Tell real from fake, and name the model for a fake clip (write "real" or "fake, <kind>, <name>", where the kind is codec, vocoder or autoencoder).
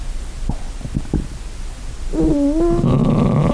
real